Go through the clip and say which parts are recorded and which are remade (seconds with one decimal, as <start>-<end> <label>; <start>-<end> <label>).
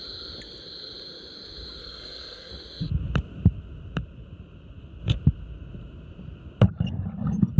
0.0-1.8 recorded; 1.8-2.5 remade; 2.5-7.6 recorded